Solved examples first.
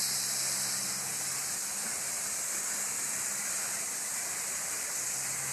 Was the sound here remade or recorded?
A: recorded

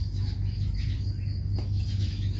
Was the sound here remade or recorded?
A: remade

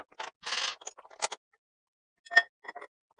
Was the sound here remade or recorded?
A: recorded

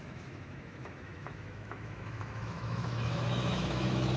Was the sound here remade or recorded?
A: remade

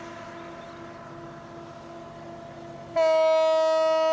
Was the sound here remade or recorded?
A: recorded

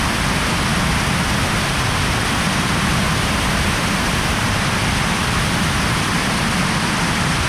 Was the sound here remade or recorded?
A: recorded